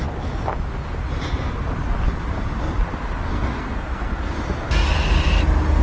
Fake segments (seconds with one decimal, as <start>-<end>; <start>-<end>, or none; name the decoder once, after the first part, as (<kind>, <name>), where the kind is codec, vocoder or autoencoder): 3.3-4.4 (codec, SNAC)